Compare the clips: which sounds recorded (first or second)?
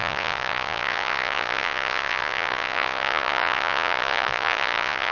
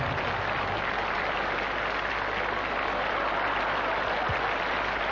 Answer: second